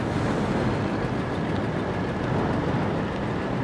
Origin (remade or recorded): recorded